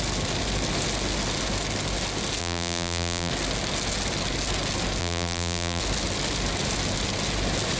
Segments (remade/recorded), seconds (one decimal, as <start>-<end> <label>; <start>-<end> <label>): 0.0-2.4 recorded; 2.4-3.3 remade; 3.3-5.0 recorded; 5.0-5.8 remade; 5.8-7.8 recorded